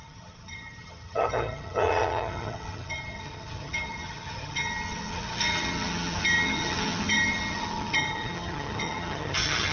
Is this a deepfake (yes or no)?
yes